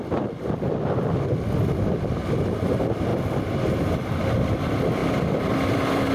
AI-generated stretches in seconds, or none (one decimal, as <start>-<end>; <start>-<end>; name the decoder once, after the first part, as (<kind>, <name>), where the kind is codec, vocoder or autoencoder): 3.1-4.6 (vocoder, BigVGAN v2); 5.0-6.1